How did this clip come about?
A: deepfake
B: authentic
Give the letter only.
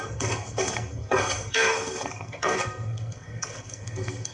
A